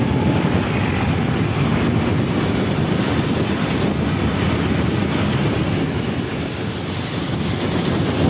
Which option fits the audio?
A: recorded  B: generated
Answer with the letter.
A